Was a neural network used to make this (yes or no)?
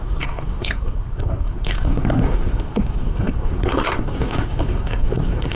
yes